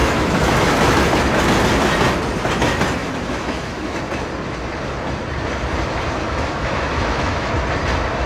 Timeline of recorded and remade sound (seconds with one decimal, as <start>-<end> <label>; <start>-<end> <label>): 0.0-0.5 remade; 0.5-3.0 recorded; 3.0-4.0 remade; 4.0-6.2 recorded; 6.2-7.5 remade; 7.5-8.3 recorded